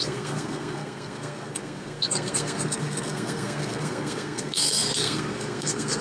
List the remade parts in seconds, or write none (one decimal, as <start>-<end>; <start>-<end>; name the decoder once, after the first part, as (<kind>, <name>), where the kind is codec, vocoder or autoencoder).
0.0-6.0 (codec, SNAC)